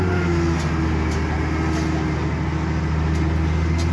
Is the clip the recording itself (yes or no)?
yes